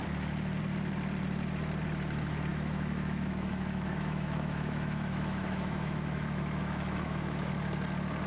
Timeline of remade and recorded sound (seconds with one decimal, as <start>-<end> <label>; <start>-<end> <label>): 0.0-2.5 recorded; 2.5-7.5 remade; 7.5-8.3 recorded